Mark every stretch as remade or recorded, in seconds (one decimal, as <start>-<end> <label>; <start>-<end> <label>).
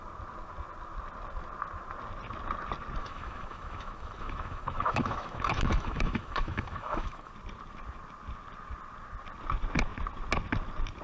0.0-3.0 recorded; 3.0-7.3 remade; 7.3-11.0 recorded